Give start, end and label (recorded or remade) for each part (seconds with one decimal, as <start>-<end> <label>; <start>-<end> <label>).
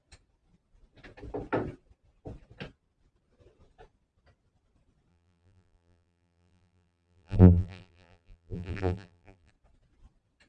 0.0-5.1 recorded; 5.1-9.5 remade; 9.5-10.5 recorded